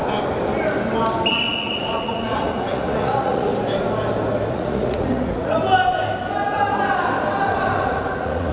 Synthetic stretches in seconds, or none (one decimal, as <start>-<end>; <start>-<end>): 1.3-3.5; 4.5-5.6; 7.8-8.5